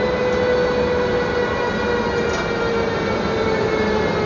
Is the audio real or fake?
real